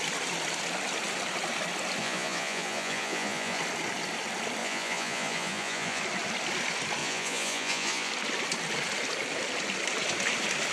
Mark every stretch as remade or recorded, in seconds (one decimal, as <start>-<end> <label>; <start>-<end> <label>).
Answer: 0.0-2.0 recorded; 2.0-3.6 remade; 3.6-4.6 recorded; 4.6-6.0 remade; 6.0-7.0 recorded; 7.0-8.1 remade; 8.1-10.7 recorded